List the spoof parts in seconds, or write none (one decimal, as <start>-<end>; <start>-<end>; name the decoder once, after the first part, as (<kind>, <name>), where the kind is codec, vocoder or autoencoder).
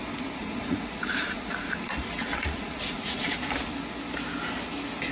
0.4-3.4 (vocoder, Vocos)